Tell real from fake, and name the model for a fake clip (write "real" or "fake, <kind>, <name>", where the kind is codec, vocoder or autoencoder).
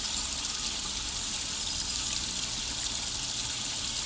real